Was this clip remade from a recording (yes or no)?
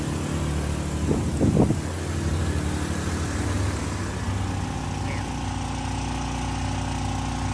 no